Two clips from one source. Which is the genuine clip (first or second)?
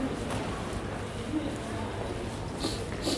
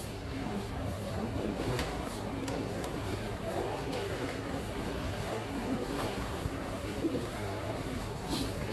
first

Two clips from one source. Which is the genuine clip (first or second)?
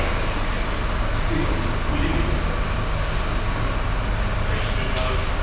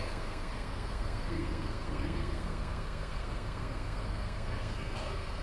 first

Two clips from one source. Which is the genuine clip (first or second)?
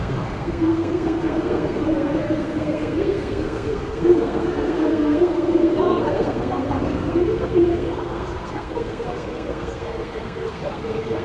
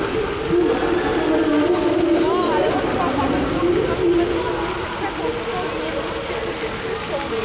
second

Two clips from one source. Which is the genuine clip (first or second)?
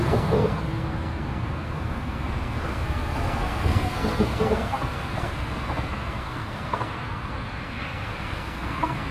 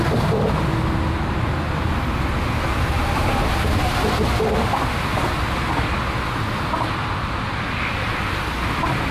second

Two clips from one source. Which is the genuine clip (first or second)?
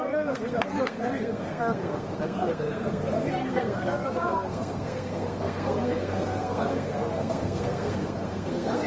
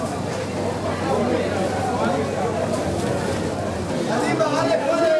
second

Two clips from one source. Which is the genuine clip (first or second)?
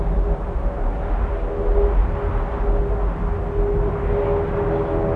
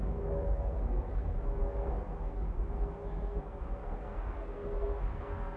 first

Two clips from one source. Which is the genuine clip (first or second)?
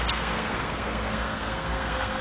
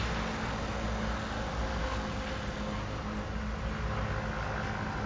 second